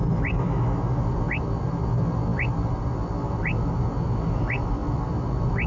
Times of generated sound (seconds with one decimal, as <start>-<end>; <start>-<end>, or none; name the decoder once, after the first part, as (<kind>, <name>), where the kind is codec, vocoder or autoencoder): none